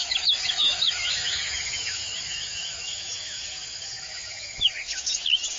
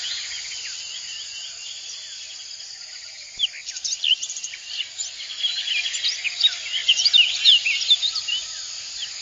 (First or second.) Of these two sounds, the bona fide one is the second